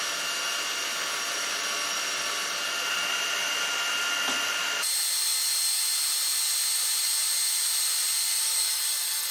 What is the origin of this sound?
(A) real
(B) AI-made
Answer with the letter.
A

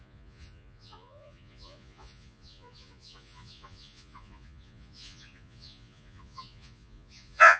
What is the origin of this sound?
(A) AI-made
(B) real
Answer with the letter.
A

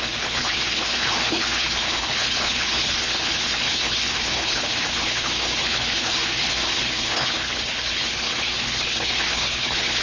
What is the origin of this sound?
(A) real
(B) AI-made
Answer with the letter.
B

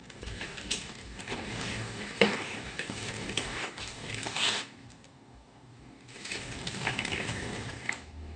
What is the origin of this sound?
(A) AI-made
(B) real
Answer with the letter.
A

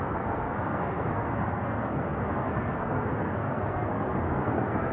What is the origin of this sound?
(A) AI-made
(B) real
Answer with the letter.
A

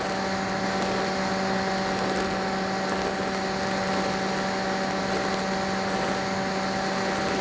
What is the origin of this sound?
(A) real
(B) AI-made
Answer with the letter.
A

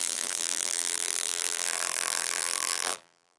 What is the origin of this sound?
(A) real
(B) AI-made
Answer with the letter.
B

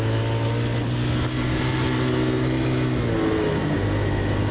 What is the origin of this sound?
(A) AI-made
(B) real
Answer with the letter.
B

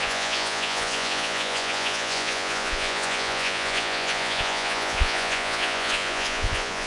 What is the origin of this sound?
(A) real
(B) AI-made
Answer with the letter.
B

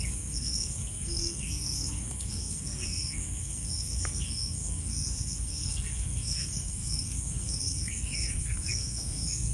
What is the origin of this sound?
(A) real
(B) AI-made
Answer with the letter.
B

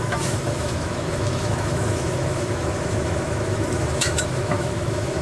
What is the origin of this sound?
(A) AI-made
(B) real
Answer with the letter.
A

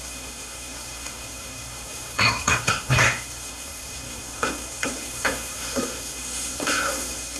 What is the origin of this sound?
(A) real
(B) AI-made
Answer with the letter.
B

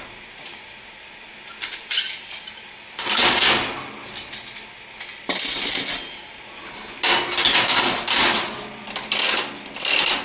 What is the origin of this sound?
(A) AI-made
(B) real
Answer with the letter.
B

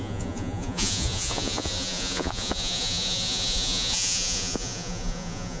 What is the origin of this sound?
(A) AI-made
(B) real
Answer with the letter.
A